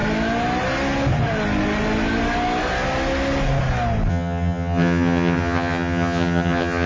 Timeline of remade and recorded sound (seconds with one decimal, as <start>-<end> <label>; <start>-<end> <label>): 0.0-4.1 recorded; 4.1-6.9 remade

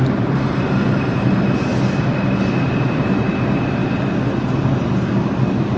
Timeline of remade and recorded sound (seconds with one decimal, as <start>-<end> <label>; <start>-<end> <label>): 0.0-1.7 remade; 1.7-2.7 recorded; 2.7-3.8 remade; 3.8-5.8 recorded

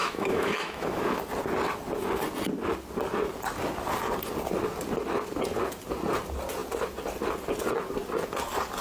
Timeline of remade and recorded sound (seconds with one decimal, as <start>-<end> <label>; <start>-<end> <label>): 0.0-1.2 remade; 1.2-8.8 recorded

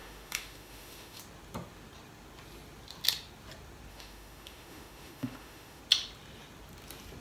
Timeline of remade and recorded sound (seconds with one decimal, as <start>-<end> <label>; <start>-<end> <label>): 0.0-1.2 remade; 1.2-3.9 recorded; 3.9-5.8 remade; 5.8-7.2 recorded

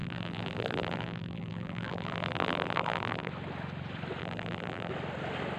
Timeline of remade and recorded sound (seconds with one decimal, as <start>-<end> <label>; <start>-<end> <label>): 0.0-3.3 remade; 3.3-4.2 recorded; 4.2-4.9 remade; 4.9-5.6 recorded

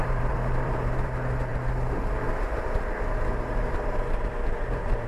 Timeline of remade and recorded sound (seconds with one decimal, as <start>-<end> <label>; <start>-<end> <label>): 0.0-1.5 remade; 1.5-4.6 recorded; 4.6-5.1 remade

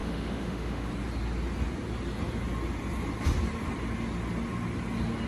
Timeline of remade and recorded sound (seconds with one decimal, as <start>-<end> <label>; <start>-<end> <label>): 0.0-0.9 remade; 0.9-5.3 recorded

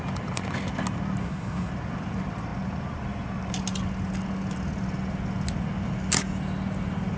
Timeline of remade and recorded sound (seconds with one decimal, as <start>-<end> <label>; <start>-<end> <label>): 0.0-1.2 recorded; 1.2-1.7 remade; 1.7-7.2 recorded